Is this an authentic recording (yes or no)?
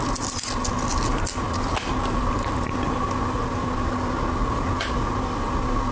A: yes